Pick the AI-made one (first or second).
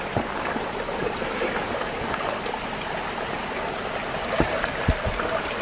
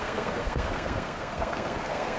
second